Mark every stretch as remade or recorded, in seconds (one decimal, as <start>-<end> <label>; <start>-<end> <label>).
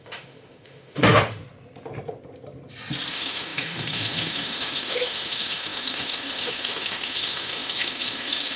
0.0-1.4 remade; 1.4-3.1 recorded; 3.1-8.6 remade